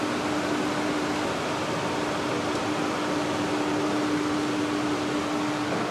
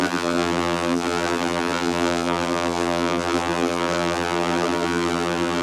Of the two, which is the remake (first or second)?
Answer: second